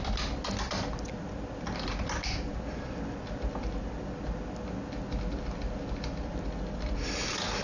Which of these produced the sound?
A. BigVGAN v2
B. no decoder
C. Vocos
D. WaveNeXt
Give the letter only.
B